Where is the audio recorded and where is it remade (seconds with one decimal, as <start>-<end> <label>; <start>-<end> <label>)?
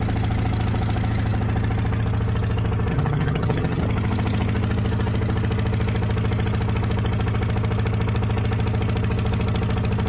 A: 0.0-2.9 recorded; 2.9-3.8 remade; 3.8-10.1 recorded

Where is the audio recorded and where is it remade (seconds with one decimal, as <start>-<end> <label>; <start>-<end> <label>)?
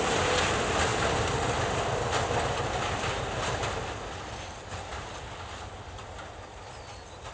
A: 0.0-7.3 recorded